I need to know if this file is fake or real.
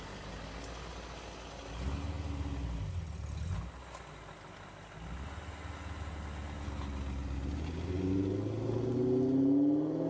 real